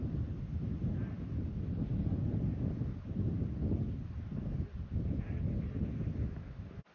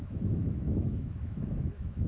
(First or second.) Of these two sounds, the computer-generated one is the second